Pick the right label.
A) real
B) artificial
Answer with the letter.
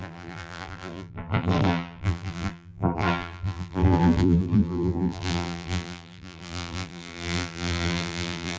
B